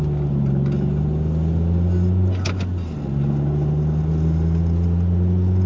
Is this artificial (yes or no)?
no